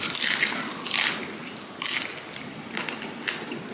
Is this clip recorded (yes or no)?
yes